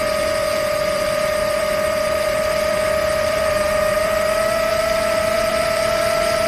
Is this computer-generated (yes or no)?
yes